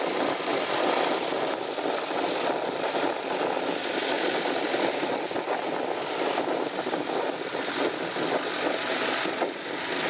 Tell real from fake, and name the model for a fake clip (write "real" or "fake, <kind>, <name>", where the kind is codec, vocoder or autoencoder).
real